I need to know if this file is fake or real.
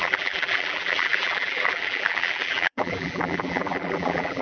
fake